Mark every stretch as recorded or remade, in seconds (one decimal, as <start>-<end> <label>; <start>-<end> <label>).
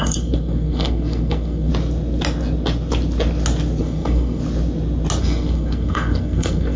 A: 0.0-1.7 remade; 1.7-3.8 recorded; 3.8-4.4 remade; 4.4-5.2 recorded; 5.2-6.8 remade